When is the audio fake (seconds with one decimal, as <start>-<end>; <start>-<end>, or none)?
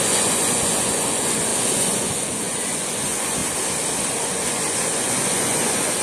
0.0-3.4; 4.2-6.0